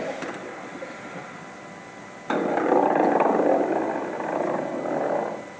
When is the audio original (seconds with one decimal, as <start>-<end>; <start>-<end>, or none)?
none